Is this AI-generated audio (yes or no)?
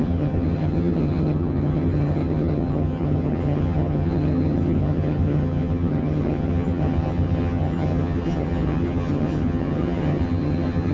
yes